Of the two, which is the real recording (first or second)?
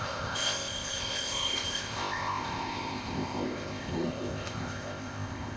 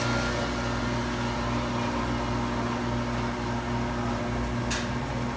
second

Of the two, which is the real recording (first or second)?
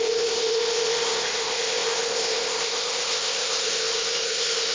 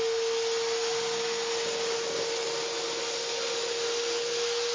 second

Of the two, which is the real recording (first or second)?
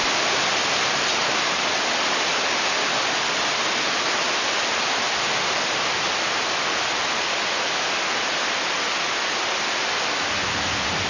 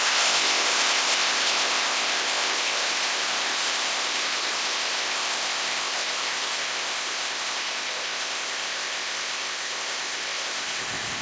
first